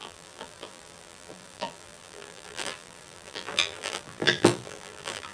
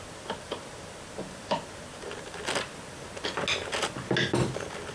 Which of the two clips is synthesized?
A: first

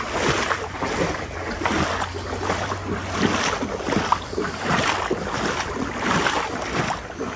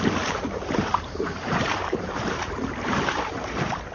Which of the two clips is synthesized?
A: second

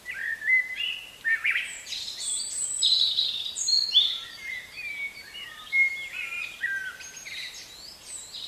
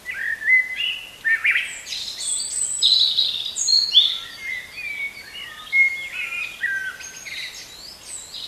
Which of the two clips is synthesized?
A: first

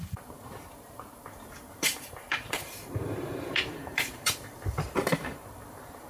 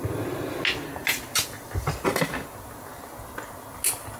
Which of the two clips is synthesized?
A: first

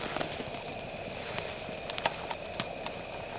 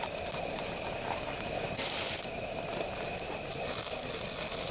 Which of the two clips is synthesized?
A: second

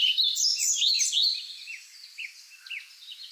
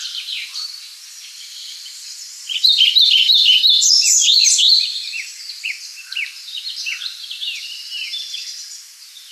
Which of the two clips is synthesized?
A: second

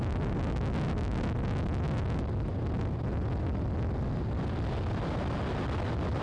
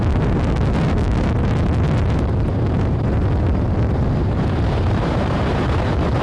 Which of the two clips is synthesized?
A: second